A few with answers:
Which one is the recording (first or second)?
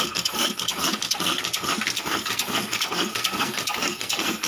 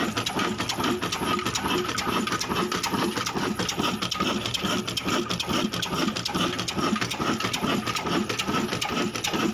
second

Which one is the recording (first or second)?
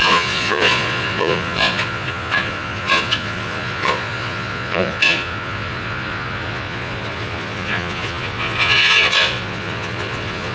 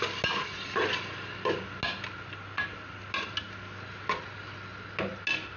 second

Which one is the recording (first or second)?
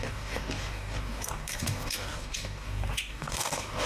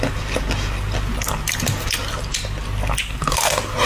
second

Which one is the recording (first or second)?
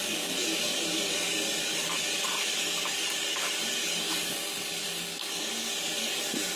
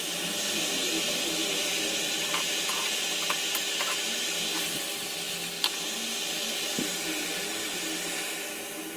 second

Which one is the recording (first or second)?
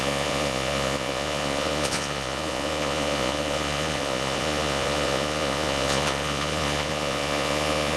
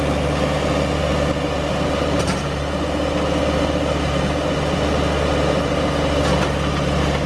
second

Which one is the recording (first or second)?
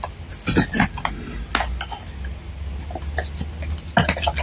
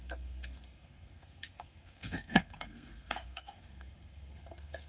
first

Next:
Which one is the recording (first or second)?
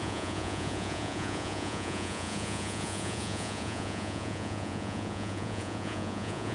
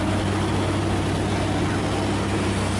second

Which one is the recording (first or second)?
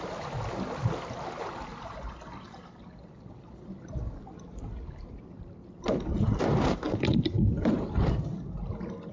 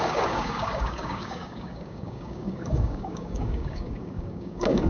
first